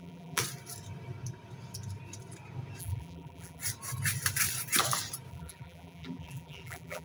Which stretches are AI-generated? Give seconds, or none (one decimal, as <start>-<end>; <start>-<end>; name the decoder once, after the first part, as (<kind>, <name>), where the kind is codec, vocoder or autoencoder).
0.0-0.4 (vocoder, BigVGAN v2); 2.8-3.6; 5.3-7.0